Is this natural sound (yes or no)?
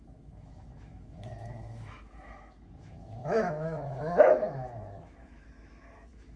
no